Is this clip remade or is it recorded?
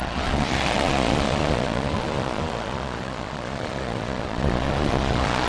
remade